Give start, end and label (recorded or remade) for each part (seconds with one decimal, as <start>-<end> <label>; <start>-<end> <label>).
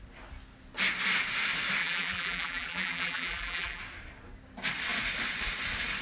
0.0-1.8 recorded; 1.8-3.8 remade; 3.8-6.0 recorded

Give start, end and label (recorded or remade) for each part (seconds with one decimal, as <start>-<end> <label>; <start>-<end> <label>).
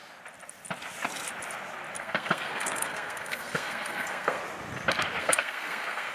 0.0-2.0 recorded; 2.0-4.4 remade; 4.4-5.2 recorded; 5.2-6.1 remade